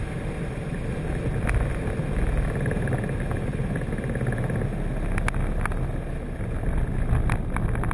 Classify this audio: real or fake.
real